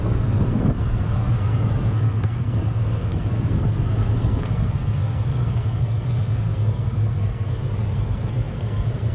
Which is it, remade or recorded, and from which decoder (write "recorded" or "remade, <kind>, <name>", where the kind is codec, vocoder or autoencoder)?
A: remade, codec, SNAC